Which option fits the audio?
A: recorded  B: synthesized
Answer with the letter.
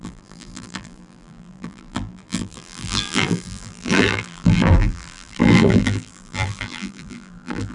B